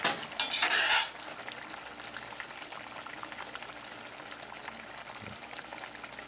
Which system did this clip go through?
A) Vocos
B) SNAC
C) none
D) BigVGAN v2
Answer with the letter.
C